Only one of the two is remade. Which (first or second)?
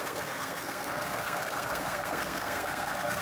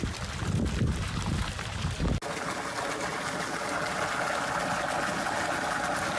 first